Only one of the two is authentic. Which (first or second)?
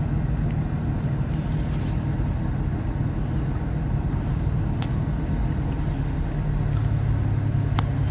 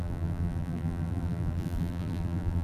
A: first